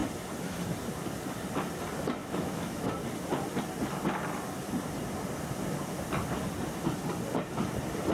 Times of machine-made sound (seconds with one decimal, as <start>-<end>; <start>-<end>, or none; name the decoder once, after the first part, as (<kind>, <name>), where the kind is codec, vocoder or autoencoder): 2.2-2.9 (autoencoder, DAC-VAE)